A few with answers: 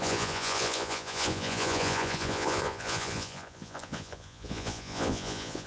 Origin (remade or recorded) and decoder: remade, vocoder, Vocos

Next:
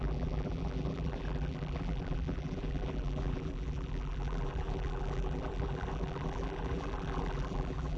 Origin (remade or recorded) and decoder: remade, vocoder, BigVGAN v2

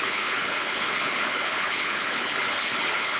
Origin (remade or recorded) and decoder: remade, codec, HILCodec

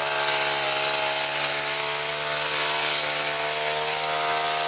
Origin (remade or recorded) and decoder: recorded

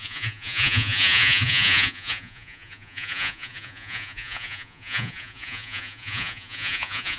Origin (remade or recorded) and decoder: remade, vocoder, Vocos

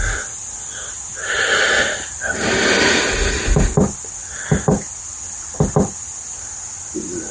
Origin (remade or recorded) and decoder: recorded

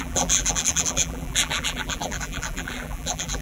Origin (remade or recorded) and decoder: remade, vocoder, BigVGAN v2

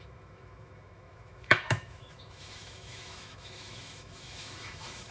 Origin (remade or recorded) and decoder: remade, autoencoder, DAC-VAE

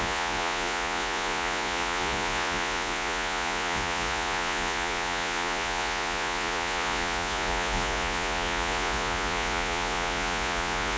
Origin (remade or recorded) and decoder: remade, vocoder, Vocos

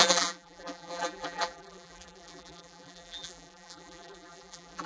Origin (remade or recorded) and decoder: remade, vocoder, BigVGAN v2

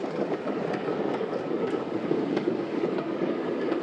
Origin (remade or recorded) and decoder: remade, codec, DAC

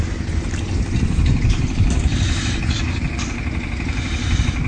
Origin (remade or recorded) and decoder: recorded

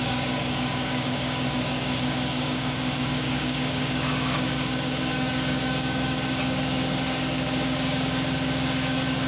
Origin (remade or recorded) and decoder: remade, codec, DAC